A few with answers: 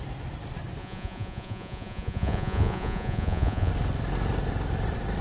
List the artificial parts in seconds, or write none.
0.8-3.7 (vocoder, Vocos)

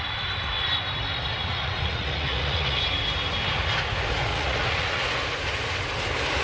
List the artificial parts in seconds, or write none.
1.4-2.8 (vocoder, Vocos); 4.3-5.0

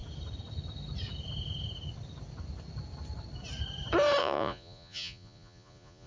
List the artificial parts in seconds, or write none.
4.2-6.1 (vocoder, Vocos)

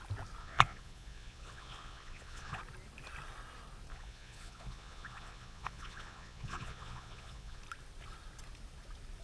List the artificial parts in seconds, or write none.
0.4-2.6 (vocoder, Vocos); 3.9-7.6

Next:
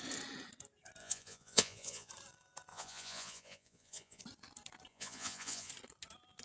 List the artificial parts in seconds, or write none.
1.0-2.1 (vocoder, Vocos); 2.7-4.2; 4.9-5.7